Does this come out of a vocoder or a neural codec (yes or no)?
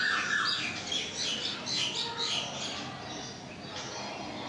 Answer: no